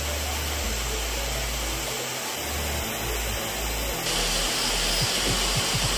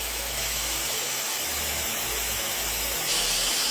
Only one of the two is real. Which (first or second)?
first